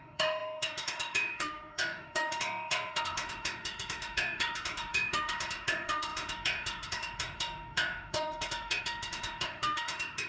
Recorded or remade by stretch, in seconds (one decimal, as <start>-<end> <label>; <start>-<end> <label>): 0.0-10.3 remade